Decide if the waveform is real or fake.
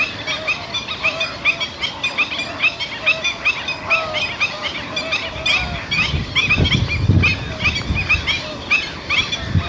real